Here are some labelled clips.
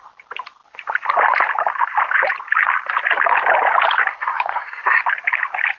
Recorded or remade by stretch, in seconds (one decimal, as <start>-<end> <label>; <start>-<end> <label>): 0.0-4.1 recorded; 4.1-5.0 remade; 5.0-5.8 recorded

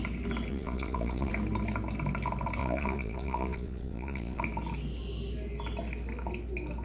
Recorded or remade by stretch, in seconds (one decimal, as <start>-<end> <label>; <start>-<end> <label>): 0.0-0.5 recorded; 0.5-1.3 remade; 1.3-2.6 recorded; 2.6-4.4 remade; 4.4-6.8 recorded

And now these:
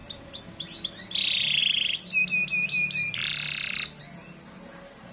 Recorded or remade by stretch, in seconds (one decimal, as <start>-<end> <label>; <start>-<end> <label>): 0.0-5.1 recorded

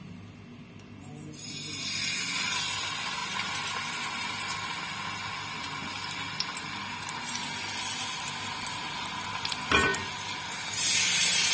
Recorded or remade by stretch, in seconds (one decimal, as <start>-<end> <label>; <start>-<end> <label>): 0.0-11.5 recorded

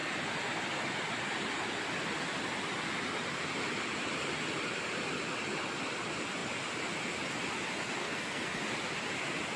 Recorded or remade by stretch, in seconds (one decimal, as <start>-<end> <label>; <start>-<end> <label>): 0.0-8.0 recorded; 8.0-8.6 remade; 8.6-9.6 recorded

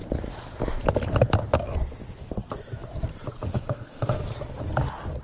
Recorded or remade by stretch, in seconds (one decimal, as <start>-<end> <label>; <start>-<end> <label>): 0.0-3.5 recorded; 3.5-4.2 remade; 4.2-5.2 recorded

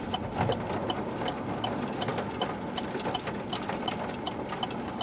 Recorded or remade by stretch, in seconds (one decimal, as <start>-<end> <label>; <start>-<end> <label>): 0.0-5.0 recorded

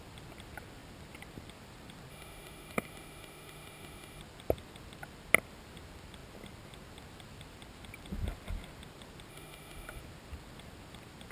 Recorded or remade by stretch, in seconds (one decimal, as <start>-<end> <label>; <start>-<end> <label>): 0.0-2.1 recorded; 2.1-4.2 remade; 4.2-9.3 recorded; 9.3-10.0 remade; 10.0-11.3 recorded